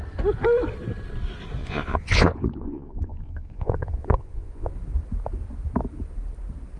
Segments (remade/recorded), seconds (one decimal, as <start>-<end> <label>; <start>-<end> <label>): 0.0-1.6 recorded; 1.6-4.7 remade; 4.7-6.8 recorded